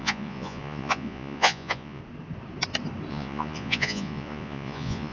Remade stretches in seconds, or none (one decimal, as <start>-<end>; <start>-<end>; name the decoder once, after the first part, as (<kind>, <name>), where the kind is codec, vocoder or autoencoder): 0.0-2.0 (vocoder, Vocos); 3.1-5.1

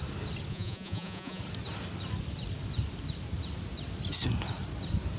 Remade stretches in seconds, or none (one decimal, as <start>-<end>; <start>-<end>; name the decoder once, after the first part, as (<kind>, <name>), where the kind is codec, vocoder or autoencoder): 0.5-1.4 (vocoder, Vocos)

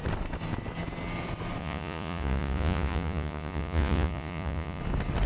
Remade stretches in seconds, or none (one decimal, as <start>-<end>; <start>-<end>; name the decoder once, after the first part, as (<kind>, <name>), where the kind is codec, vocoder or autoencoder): 1.6-4.8 (vocoder, Vocos)